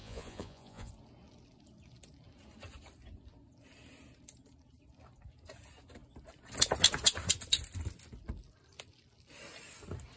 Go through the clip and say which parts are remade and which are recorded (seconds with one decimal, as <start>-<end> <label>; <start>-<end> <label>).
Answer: 0.0-0.9 remade; 0.9-10.2 recorded